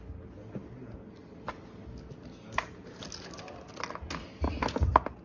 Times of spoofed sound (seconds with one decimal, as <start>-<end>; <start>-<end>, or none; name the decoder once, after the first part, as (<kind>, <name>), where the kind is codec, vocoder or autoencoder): none

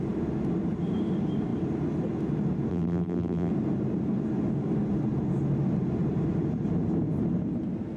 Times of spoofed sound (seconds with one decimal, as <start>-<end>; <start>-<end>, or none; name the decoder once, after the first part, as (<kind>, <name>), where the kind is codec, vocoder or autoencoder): 2.7-3.5 (vocoder, BigVGAN v2)